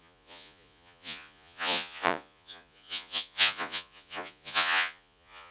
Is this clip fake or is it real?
fake